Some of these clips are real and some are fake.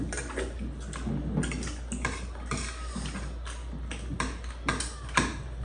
real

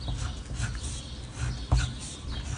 real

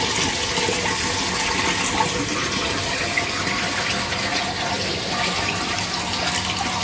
real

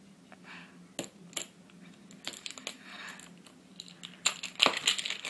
real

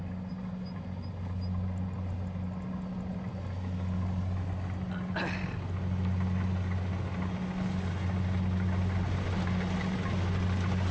real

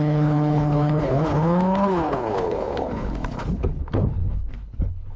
fake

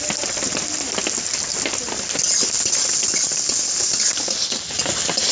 real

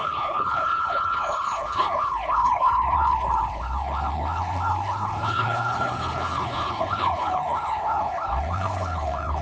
fake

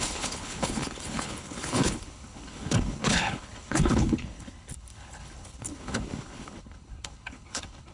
fake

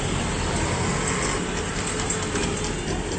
real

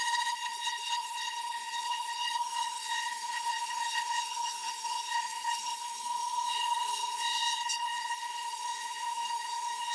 fake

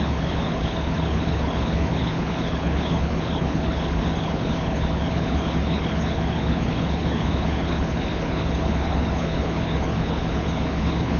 fake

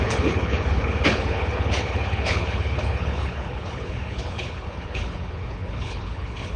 fake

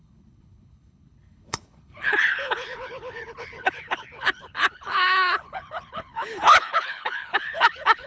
fake